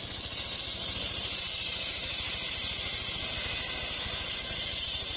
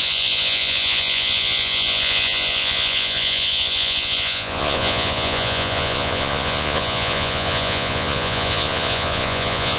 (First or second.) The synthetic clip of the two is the second